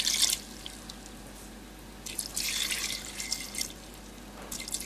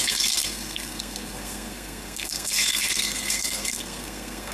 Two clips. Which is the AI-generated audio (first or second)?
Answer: second